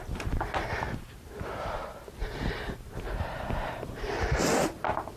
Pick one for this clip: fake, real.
real